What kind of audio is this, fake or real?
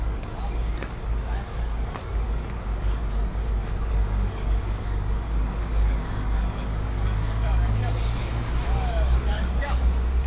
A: fake